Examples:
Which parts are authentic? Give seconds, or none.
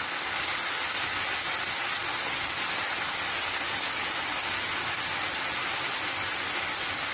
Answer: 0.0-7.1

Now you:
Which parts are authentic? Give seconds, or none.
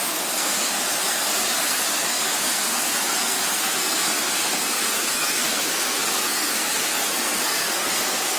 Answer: none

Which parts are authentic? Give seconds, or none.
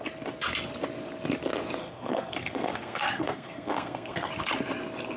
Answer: 0.0-1.8; 4.3-5.2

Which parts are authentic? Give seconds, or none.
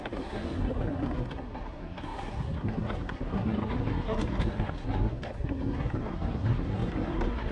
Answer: none